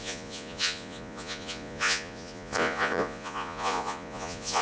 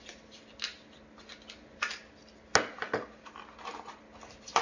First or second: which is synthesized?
first